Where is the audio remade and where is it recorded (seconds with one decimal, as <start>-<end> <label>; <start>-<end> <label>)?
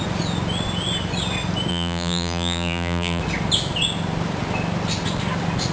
0.0-1.7 recorded; 1.7-3.2 remade; 3.2-5.7 recorded